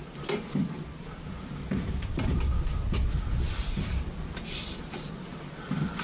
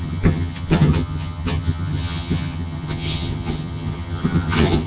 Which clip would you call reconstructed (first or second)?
second